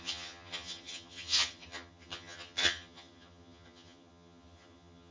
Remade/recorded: remade